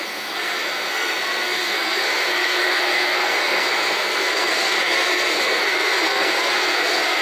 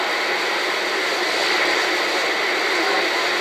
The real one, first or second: second